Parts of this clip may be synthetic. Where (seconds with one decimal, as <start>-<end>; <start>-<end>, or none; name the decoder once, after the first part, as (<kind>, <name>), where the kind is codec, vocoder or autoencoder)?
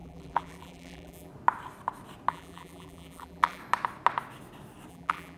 0.0-1.3 (vocoder, BigVGAN v2); 2.3-3.6; 4.9-5.4